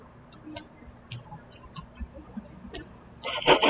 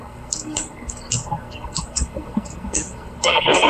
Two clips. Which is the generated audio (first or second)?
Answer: second